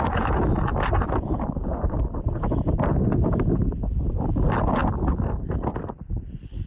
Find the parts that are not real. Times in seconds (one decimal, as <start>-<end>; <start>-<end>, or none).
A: none